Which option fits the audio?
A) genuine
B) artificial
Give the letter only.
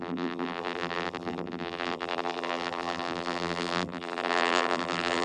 B